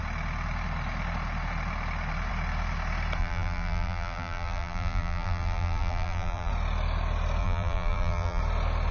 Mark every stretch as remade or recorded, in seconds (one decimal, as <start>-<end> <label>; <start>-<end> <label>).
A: 0.0-3.2 recorded; 3.2-6.5 remade; 6.5-7.4 recorded; 7.4-8.4 remade; 8.4-8.9 recorded